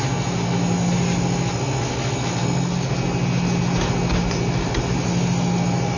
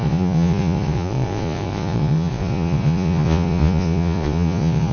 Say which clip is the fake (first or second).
second